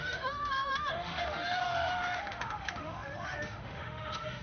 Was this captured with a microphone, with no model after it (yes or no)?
no